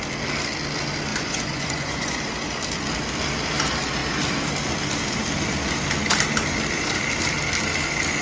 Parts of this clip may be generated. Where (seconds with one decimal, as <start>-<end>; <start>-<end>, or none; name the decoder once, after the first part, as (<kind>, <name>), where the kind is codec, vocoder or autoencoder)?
1.1-2.2 (vocoder, Vocos)